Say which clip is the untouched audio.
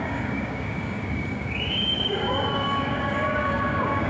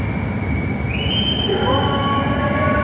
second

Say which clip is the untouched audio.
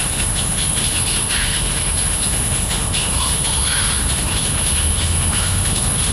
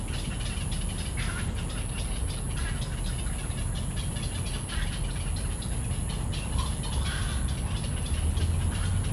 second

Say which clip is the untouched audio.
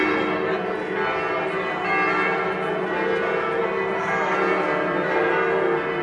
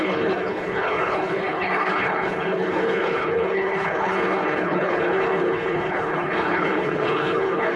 first